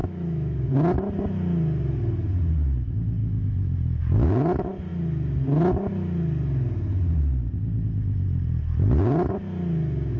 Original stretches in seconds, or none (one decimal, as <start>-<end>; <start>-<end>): 0.7-3.2; 4.0-10.2